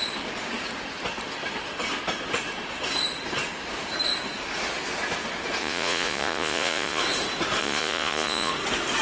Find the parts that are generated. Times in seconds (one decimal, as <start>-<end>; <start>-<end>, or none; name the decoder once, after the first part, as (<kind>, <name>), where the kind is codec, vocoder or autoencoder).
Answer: 5.6-7.0 (vocoder, Vocos); 7.6-8.5